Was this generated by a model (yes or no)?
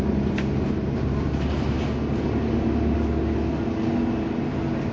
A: no